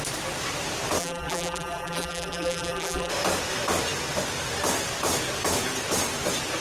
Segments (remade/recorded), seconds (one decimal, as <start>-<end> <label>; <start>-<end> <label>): 0.0-1.0 recorded; 1.0-3.1 remade; 3.1-6.6 recorded